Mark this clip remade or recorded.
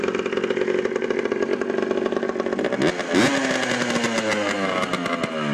recorded